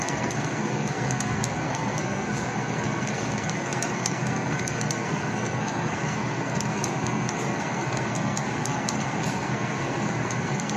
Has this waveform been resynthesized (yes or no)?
yes